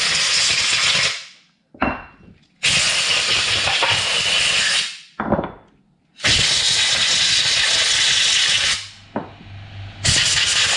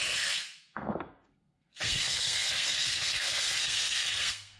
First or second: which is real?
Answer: first